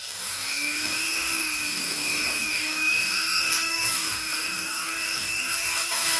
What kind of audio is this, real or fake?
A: fake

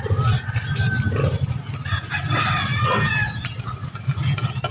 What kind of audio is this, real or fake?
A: real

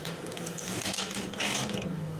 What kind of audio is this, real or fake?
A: fake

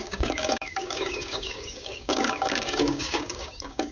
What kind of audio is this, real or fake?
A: fake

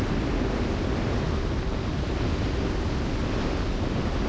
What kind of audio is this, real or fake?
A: real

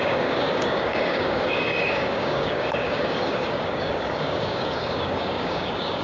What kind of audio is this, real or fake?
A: fake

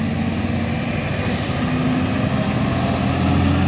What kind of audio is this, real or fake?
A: real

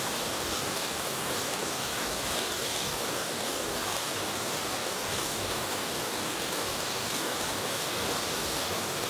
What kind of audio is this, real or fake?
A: fake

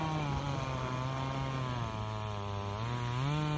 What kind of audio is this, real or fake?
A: real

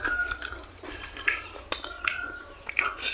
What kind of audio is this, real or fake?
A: real